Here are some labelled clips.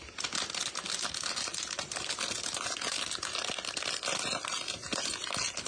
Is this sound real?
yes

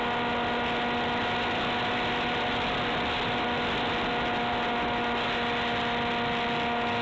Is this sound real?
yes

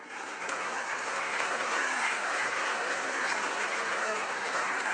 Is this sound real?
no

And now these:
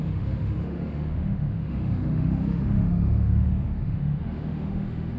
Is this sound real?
no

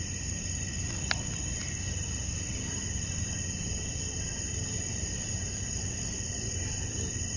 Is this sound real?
yes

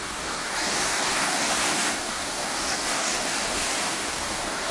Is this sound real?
no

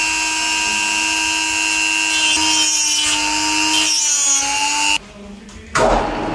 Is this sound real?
yes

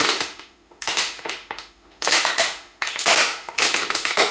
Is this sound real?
no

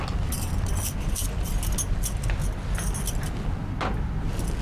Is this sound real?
yes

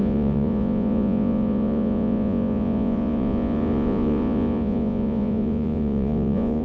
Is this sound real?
no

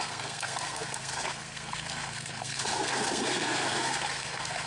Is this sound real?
no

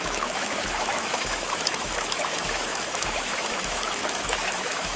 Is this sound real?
no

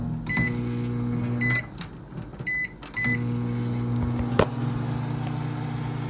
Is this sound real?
yes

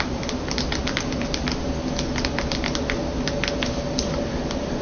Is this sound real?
yes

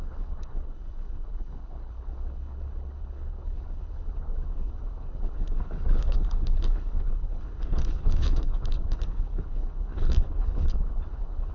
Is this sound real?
no